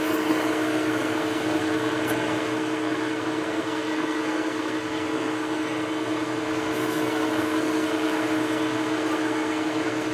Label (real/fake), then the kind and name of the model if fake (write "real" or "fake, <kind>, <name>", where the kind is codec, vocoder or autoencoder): fake, codec, SNAC